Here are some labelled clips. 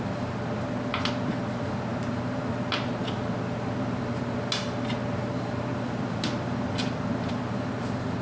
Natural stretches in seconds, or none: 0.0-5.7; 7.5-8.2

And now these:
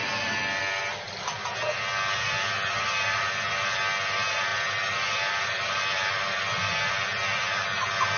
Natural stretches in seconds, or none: 0.0-4.5; 6.4-8.2

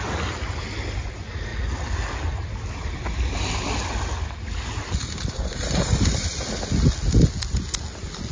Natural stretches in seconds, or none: 0.0-5.0; 6.3-8.3

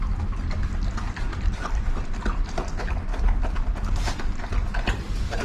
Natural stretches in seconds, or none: 0.0-1.3; 2.0-3.1; 3.9-5.4

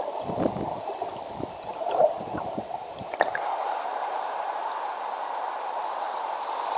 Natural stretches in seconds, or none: 0.0-1.7; 5.8-6.8

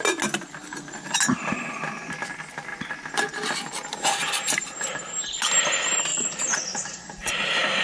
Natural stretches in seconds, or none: 0.0-6.1; 7.3-7.8